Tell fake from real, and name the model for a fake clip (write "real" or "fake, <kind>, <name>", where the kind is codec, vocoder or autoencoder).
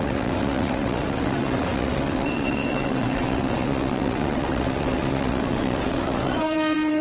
fake, vocoder, WaveNeXt